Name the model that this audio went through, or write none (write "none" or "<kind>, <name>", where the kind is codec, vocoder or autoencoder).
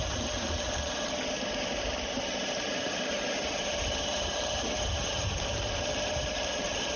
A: vocoder, BigVGAN v2